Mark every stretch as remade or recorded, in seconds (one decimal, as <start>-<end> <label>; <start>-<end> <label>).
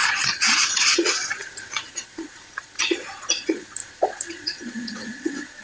0.0-5.6 remade